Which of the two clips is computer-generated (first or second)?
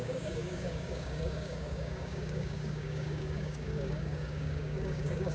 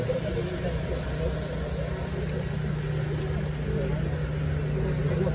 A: first